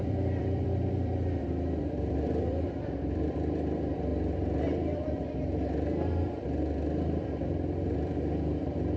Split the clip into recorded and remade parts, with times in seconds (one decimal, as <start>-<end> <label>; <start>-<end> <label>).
0.0-4.1 remade; 4.1-9.0 recorded